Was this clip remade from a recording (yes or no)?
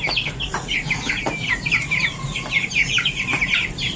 no